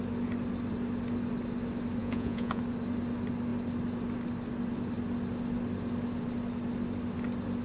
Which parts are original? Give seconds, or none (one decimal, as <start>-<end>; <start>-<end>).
0.0-2.0; 2.6-7.6